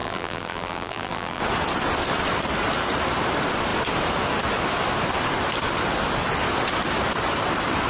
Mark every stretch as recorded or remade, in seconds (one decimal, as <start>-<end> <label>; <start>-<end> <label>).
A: 0.0-1.4 remade; 1.4-7.9 recorded